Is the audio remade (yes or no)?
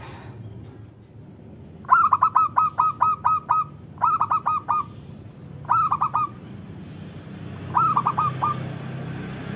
no